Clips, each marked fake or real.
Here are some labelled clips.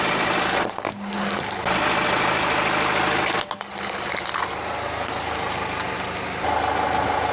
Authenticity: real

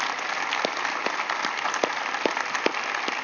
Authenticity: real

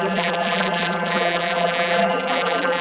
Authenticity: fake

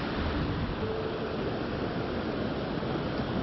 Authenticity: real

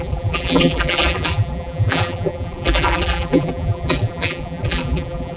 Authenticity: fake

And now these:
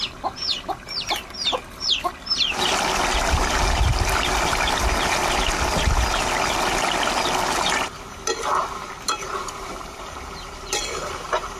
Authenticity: real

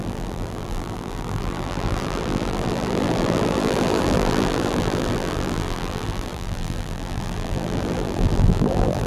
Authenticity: fake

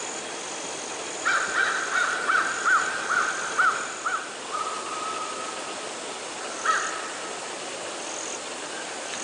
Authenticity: real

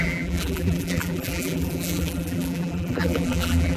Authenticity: fake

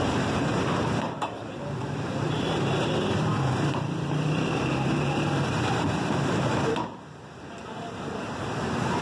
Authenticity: fake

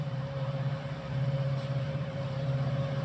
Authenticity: fake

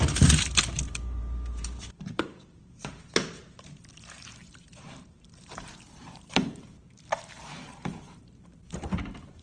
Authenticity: fake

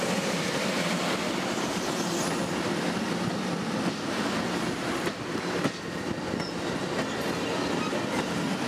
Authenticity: fake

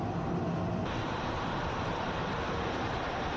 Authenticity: fake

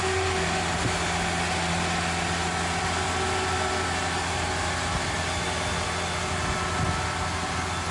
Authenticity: real